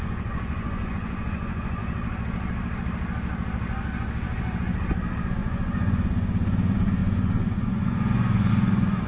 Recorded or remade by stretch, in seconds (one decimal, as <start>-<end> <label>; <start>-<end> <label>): 0.0-1.8 remade; 1.8-5.3 recorded; 5.3-9.1 remade